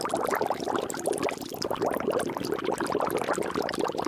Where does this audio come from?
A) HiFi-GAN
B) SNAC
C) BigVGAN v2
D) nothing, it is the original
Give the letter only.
D